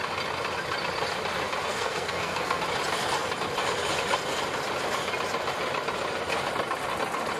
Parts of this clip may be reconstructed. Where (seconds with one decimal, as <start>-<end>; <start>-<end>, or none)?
1.6-2.6